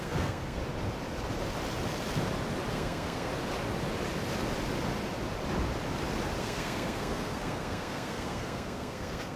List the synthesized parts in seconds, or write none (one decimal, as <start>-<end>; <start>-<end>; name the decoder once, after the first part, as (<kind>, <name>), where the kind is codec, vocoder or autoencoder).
0.0-0.6 (codec, SNAC); 2.7-3.3; 6.4-9.4